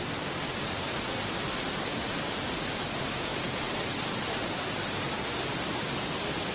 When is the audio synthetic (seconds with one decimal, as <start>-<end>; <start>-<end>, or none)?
none